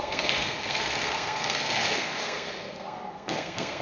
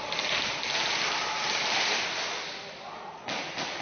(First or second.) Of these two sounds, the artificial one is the first